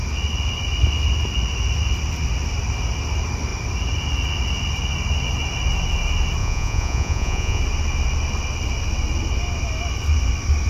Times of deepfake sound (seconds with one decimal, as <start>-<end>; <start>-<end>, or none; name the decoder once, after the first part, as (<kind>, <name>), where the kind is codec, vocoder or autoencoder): 6.4-7.6 (vocoder, Vocos)